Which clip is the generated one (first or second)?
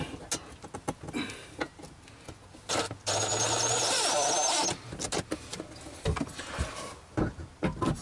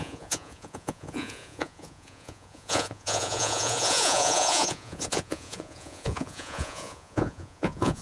second